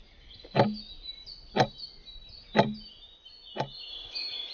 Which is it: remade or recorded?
recorded